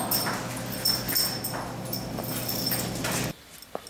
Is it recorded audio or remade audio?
recorded